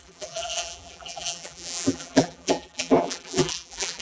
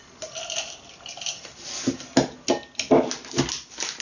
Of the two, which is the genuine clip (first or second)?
second